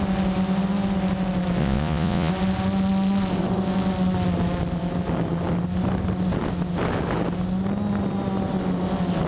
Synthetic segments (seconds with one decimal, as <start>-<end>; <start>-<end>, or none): 1.6-2.3